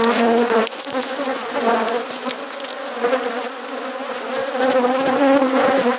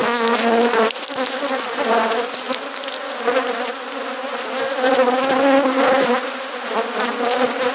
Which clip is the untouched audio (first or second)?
second